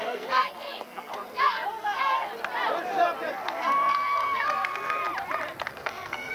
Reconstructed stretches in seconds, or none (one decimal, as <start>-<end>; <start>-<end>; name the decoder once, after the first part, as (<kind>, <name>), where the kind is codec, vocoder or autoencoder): 0.0-2.3 (codec, SNAC); 3.3-5.0; 5.7-6.3